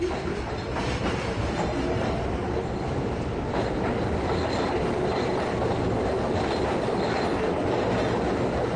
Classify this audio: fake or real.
real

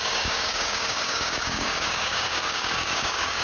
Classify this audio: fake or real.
fake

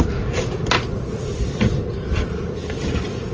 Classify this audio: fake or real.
real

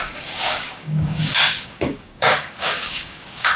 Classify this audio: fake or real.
fake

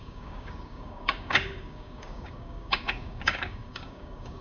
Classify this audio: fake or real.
fake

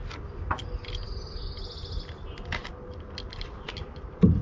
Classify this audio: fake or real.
real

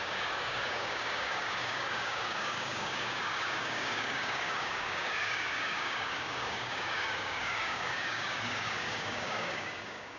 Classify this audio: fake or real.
fake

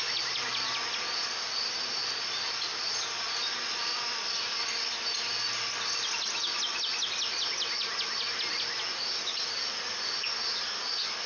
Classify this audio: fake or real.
real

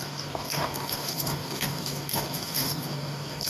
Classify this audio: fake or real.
fake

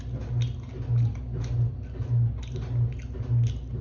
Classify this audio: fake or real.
real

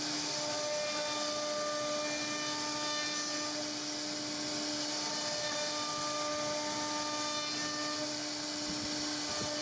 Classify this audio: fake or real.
real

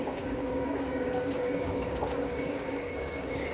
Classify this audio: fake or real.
fake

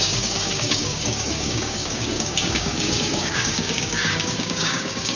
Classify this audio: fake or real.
fake